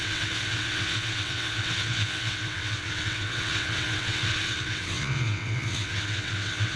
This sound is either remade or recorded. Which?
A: remade